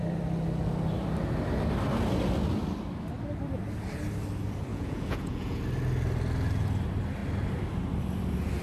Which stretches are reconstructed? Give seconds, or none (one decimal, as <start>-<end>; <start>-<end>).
4.7-5.6